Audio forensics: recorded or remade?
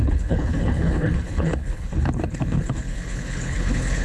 remade